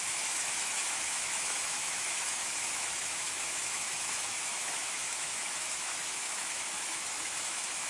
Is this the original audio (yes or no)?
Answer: no